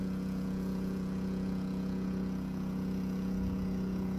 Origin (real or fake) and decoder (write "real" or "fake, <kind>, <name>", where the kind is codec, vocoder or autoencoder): fake, vocoder, Vocos